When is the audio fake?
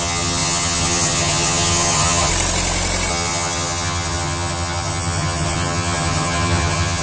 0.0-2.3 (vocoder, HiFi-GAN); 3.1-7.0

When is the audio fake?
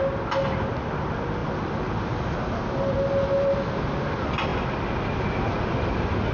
none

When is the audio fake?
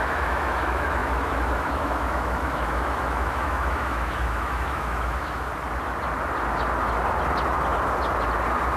0.0-5.5 (autoencoder, DAC-VAE)